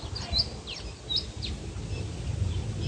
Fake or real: real